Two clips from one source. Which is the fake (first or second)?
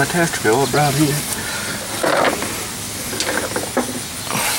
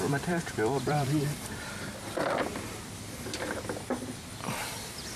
second